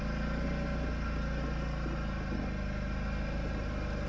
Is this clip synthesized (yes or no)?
no